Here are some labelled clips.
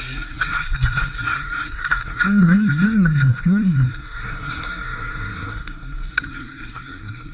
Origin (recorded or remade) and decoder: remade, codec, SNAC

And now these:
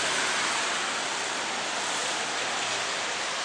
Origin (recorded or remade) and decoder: recorded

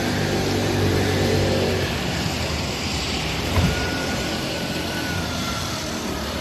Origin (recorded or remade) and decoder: remade, vocoder, BigVGAN v2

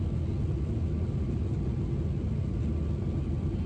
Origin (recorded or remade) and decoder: recorded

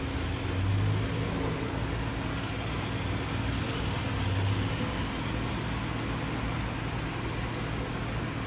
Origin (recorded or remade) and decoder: recorded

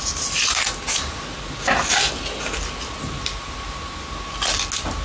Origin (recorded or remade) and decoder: recorded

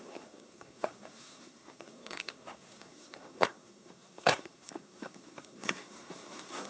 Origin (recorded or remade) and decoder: remade, codec, SNAC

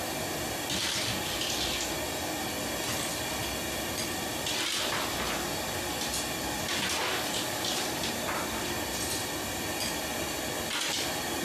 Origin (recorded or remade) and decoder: recorded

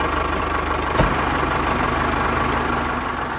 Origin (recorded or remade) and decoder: recorded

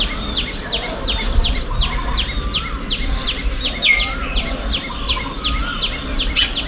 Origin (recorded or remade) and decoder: recorded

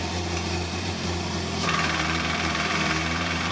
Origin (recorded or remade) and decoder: remade, vocoder, BigVGAN v2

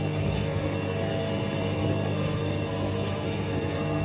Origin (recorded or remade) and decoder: remade, codec, SNAC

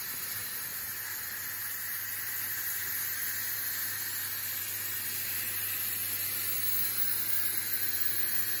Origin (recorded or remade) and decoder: recorded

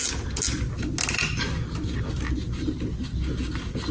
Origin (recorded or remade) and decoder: recorded